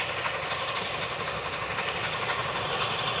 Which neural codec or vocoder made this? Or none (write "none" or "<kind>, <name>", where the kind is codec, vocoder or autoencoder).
none